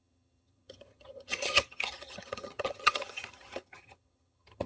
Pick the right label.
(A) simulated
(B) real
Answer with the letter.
A